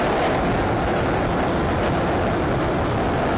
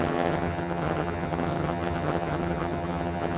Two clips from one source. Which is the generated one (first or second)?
second